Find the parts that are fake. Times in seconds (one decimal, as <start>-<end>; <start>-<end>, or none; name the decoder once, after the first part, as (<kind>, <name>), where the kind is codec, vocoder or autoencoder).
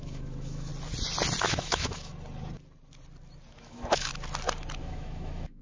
0.0-0.7 (autoencoder, DAC-VAE); 1.4-2.1; 3.6-4.1; 4.8-5.6